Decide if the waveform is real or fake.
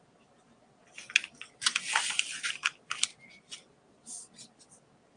real